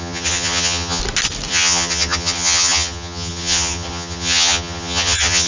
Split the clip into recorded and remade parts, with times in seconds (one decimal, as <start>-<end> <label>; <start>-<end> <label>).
0.0-1.0 remade; 1.0-1.5 recorded; 1.5-5.5 remade